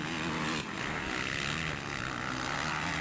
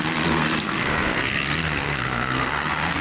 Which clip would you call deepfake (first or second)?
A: second